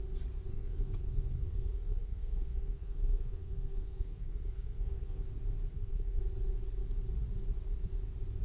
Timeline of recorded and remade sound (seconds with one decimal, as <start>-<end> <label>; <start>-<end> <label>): 0.0-0.5 recorded; 0.5-5.2 remade; 5.2-5.7 recorded; 5.7-6.2 remade; 6.2-8.4 recorded